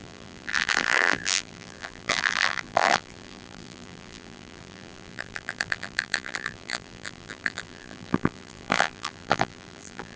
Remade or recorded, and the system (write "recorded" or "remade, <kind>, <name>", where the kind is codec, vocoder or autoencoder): remade, vocoder, BigVGAN v2